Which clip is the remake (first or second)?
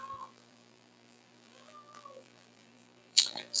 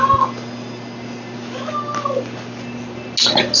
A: first